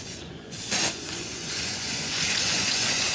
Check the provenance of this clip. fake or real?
fake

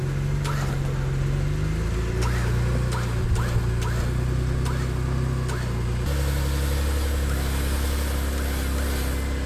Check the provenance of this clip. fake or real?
real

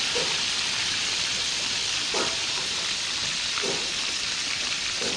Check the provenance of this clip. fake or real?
fake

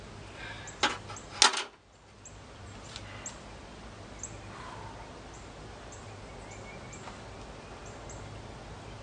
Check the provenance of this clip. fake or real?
real